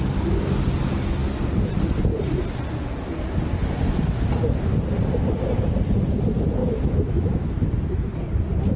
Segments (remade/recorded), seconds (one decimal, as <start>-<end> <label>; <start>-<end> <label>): 0.0-6.6 recorded; 6.6-8.2 remade; 8.2-8.8 recorded